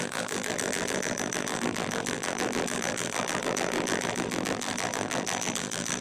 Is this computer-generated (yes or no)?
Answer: yes